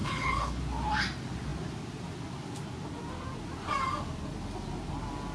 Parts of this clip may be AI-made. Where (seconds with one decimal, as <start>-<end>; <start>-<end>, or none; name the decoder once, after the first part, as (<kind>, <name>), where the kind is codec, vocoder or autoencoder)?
0.0-0.6 (codec, HILCodec)